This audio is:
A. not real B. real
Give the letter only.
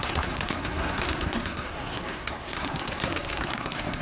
A